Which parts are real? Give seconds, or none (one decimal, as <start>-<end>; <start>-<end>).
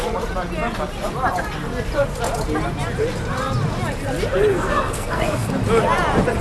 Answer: 0.0-4.5; 5.6-6.4